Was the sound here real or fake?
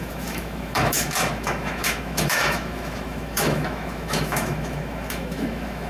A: fake